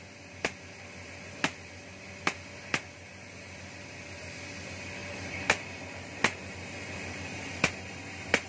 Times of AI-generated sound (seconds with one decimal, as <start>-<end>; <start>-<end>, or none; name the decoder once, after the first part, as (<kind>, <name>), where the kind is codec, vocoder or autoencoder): none